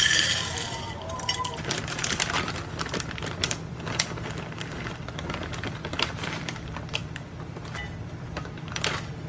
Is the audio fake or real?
fake